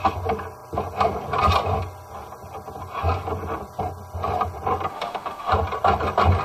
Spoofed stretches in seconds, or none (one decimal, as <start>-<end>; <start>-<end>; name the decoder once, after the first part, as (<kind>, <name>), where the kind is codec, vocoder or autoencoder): 4.9-5.5 (autoencoder, DAC-VAE)